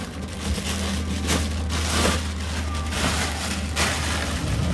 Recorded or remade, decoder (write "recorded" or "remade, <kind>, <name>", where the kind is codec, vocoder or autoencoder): recorded